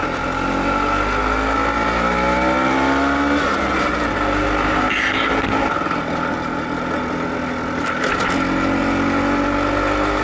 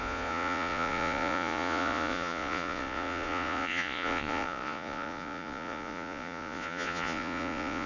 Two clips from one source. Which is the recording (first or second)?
first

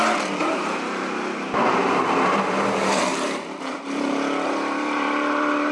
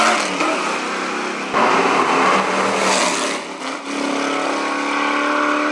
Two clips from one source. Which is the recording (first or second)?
second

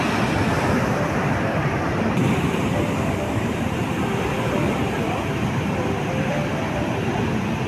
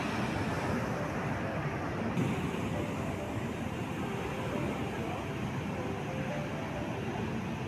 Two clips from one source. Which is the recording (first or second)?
second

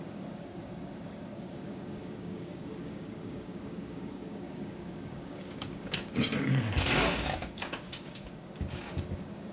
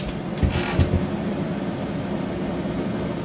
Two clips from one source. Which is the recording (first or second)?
second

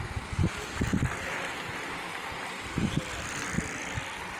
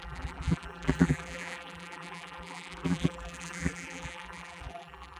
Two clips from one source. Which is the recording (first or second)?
first